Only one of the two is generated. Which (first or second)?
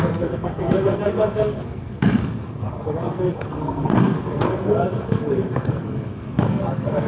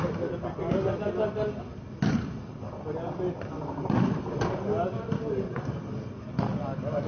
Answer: first